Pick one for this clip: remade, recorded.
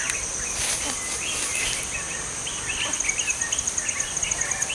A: recorded